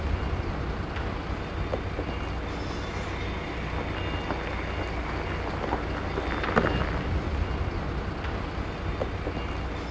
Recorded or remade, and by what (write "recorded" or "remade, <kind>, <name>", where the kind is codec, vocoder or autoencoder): recorded